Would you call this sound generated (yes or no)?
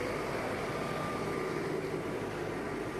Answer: no